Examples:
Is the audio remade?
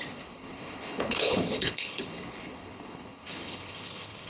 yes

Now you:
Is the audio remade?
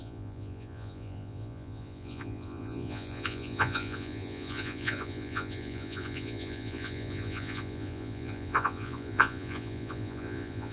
yes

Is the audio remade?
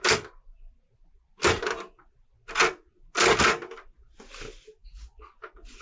no